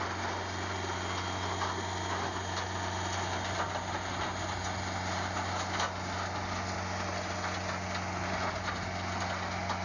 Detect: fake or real real